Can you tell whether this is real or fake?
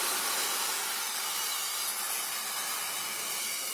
real